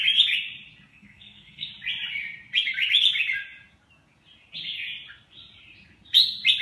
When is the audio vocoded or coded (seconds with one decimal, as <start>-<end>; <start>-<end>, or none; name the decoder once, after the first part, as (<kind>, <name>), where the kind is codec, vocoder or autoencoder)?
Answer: 0.9-1.7 (codec, SNAC)